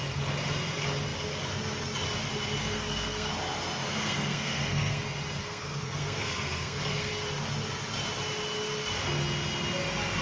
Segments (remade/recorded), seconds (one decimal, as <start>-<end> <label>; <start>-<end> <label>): 0.0-2.6 recorded; 2.6-3.3 remade; 3.3-3.8 recorded; 3.8-5.0 remade; 5.0-5.4 recorded; 5.4-7.1 remade; 7.1-10.2 recorded